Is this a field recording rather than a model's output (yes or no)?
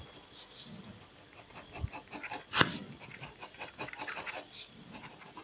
yes